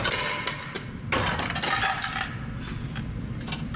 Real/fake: real